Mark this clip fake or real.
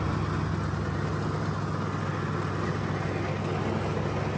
real